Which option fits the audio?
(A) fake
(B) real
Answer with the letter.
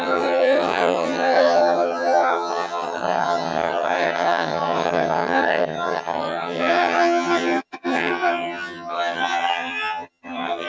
A